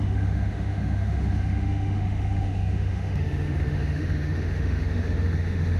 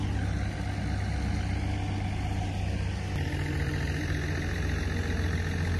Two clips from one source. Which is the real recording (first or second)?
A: second